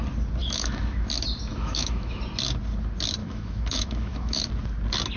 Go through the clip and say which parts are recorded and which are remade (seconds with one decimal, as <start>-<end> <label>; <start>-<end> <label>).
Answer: 0.0-0.4 recorded; 0.4-1.1 remade; 1.1-1.5 recorded; 1.5-2.2 remade; 2.2-3.2 recorded; 3.2-4.5 remade; 4.5-5.2 recorded